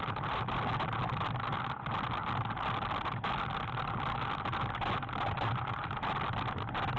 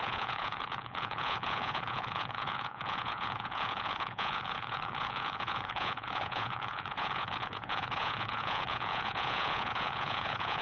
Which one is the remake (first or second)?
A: second